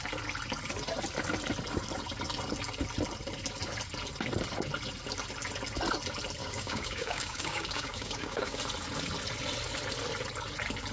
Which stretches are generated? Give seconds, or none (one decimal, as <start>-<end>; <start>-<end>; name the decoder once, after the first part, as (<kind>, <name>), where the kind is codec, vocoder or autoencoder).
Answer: 6.4-8.6 (codec, DAC)